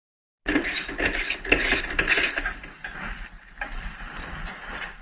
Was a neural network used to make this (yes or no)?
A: no